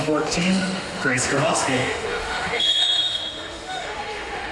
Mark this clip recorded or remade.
remade